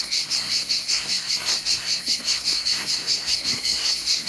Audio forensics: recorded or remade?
remade